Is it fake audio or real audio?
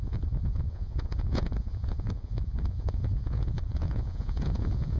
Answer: fake